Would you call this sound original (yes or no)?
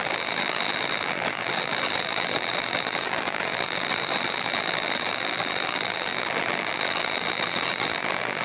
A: no